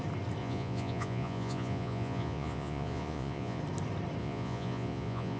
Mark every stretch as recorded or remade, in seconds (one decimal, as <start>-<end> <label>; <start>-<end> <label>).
0.0-0.4 recorded; 0.4-3.6 remade; 3.6-4.2 recorded; 4.2-5.4 remade